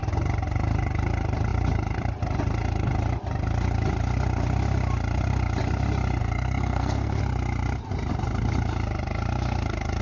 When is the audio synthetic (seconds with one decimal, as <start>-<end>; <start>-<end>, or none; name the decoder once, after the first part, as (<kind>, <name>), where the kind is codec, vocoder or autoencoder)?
6.2-7.2 (codec, SNAC)